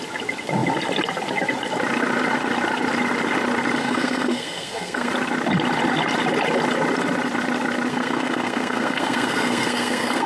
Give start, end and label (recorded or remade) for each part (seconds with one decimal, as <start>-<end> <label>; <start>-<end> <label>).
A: 0.0-3.8 recorded; 3.8-5.1 remade; 5.1-7.9 recorded; 7.9-10.3 remade